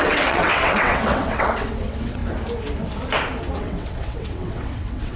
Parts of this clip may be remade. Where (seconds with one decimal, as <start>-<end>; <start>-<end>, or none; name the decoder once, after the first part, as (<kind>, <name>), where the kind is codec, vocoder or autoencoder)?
0.0-2.2 (vocoder, WaveNeXt); 3.6-5.2